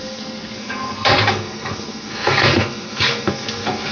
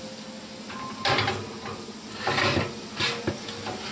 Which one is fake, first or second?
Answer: first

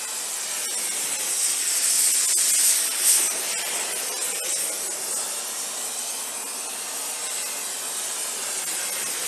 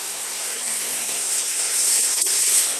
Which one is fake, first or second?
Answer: second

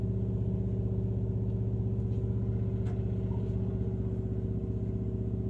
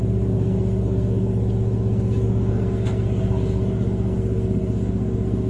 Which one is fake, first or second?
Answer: second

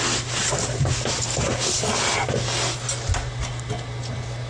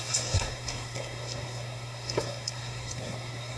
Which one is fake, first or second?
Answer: second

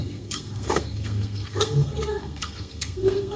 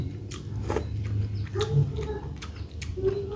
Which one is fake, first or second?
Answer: first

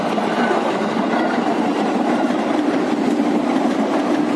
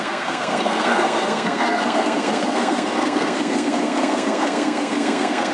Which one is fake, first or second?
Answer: second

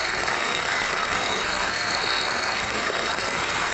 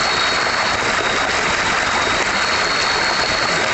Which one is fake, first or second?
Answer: first